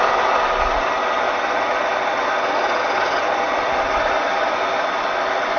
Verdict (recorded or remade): recorded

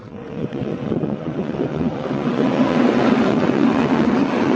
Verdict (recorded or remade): remade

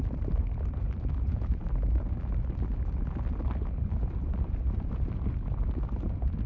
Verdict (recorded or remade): recorded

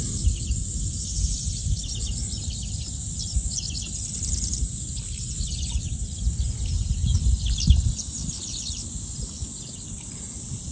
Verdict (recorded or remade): recorded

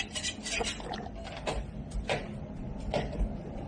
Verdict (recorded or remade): recorded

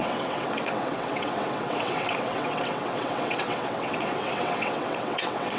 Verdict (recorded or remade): remade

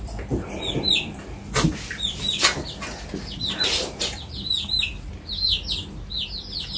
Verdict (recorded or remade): recorded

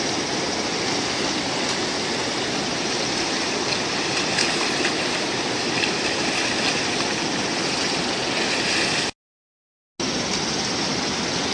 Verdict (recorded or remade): recorded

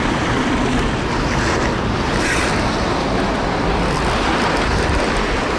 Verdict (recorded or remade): recorded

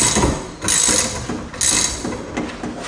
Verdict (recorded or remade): recorded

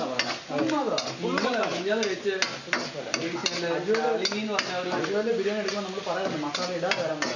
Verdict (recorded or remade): recorded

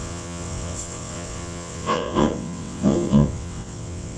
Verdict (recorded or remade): remade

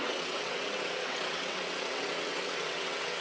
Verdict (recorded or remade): remade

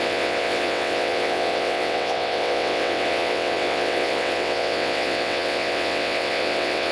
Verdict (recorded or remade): remade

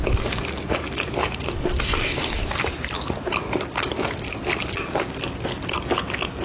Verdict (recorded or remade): recorded